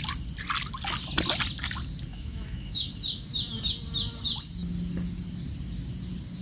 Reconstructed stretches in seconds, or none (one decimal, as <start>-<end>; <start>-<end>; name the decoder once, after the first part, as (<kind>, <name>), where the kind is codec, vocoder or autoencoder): 2.1-2.9 (autoencoder, DAC-VAE)